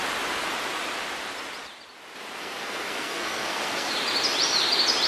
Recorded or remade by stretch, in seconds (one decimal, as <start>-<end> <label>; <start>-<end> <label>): 0.0-2.4 recorded; 2.4-3.9 remade; 3.9-5.1 recorded

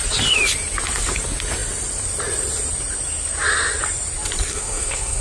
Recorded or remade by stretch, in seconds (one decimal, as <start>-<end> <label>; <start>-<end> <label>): 0.0-4.5 recorded; 4.5-5.2 remade

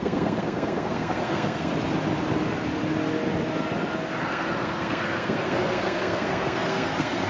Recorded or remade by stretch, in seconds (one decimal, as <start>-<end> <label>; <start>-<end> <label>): 0.0-1.7 remade; 1.7-4.2 recorded; 4.2-7.3 remade

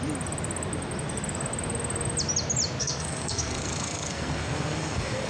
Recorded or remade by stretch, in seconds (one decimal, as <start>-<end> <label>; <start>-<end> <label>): 0.0-2.8 recorded; 2.8-5.3 remade

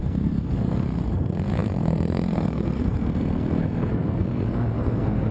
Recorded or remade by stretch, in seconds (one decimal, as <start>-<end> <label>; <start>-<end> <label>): 0.0-5.3 remade